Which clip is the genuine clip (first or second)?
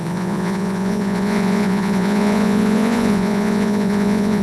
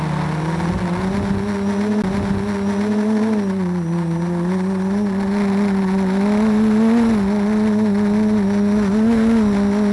second